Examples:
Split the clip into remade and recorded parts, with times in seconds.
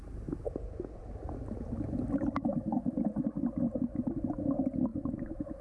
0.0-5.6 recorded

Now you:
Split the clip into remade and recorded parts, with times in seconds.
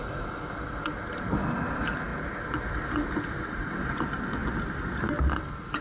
0.0-5.8 recorded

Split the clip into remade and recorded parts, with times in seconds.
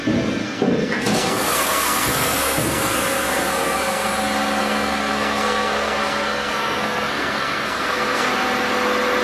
0.0-0.4 recorded; 0.4-4.1 remade; 4.1-4.6 recorded; 4.6-8.3 remade; 8.3-9.2 recorded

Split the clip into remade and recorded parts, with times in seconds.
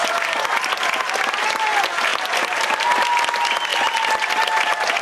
0.0-5.0 recorded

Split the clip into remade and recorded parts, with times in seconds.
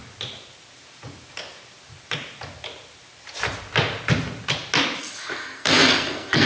0.0-5.0 recorded; 5.0-6.5 remade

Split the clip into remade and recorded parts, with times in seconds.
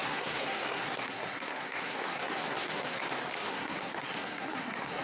0.0-3.0 remade; 3.0-3.5 recorded; 3.5-5.0 remade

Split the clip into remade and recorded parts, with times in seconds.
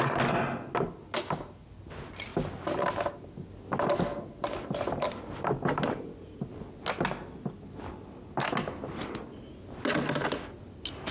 0.0-11.1 recorded